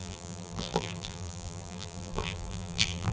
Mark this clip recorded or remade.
remade